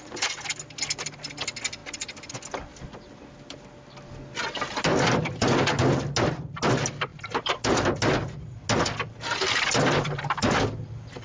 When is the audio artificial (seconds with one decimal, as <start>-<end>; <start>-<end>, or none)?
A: none